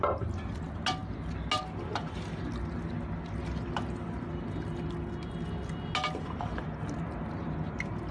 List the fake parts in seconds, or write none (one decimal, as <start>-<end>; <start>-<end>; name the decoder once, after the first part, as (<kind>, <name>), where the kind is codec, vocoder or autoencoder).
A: none